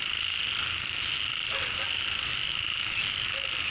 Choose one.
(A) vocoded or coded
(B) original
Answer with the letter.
B